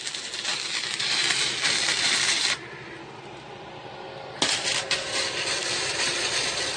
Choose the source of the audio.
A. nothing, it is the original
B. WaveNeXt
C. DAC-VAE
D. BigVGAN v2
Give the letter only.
A